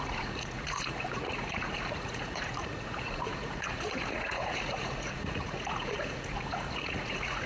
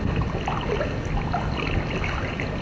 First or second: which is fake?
first